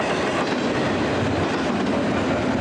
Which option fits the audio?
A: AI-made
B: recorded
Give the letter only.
B